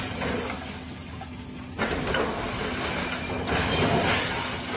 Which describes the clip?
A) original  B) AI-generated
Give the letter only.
A